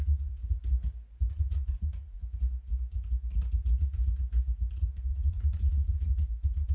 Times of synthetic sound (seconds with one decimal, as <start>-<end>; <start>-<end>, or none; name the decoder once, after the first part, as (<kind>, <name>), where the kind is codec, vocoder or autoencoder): 0.0-0.4 (vocoder, Vocos); 1.3-2.2; 5.0-6.7